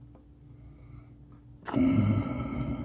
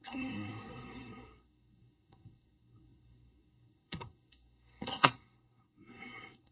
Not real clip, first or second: second